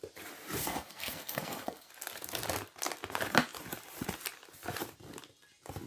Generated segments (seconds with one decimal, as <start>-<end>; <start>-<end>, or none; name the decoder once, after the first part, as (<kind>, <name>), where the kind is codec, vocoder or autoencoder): 0.6-1.9 (codec, SNAC)

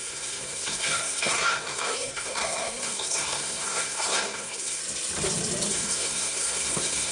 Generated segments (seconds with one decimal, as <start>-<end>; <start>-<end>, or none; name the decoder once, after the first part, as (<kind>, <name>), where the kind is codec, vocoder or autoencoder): 0.0-4.8 (codec, SNAC); 5.7-7.1

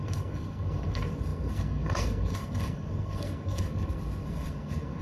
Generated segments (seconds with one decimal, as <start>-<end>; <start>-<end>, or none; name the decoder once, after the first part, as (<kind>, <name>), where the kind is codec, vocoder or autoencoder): 0.0-5.0 (codec, SNAC)

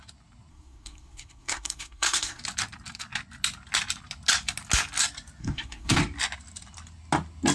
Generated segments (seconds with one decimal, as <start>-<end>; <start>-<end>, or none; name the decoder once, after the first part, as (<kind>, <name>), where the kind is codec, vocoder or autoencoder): 0.5-2.4 (codec, SNAC); 5.4-6.0

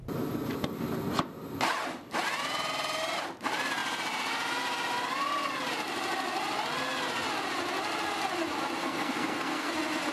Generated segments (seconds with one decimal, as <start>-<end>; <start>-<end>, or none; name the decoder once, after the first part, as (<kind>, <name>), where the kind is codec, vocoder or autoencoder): 8.8-9.7 (codec, SNAC)